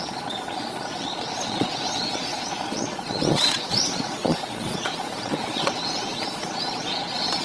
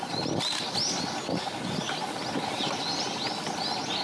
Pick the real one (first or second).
second